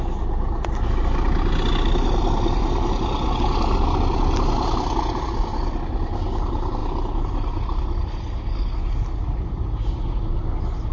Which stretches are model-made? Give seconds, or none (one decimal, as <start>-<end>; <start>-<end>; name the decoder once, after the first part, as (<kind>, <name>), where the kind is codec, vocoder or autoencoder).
none